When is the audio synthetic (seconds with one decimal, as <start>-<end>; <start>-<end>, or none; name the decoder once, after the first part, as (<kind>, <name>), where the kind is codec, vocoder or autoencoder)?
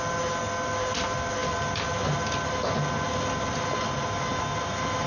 none